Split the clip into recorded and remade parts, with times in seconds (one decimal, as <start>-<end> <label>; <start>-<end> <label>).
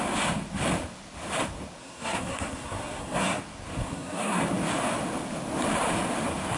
0.0-1.8 recorded; 1.8-3.4 remade; 3.4-3.8 recorded; 3.8-4.4 remade; 4.4-6.6 recorded